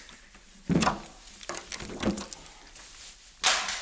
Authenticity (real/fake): real